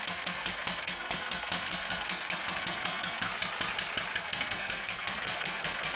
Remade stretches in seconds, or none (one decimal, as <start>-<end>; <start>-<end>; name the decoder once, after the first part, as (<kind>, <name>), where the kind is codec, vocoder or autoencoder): 0.0-3.3 (codec, SNAC); 4.2-6.0